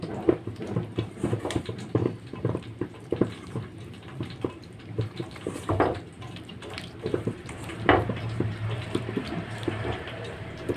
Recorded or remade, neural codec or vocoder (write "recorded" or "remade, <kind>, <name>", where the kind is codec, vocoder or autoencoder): remade, vocoder, BigVGAN v2